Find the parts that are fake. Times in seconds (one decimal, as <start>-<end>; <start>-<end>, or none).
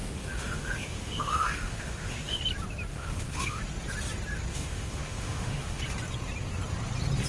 0.0-2.4; 2.9-3.6; 4.5-5.8